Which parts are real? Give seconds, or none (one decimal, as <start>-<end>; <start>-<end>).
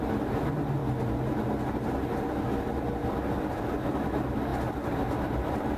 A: 0.0-3.0; 3.7-5.8